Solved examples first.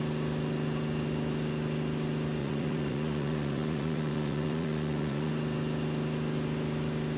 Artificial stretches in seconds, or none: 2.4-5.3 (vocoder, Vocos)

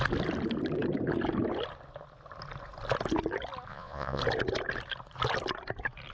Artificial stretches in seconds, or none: 3.7-4.2 (vocoder, Vocos)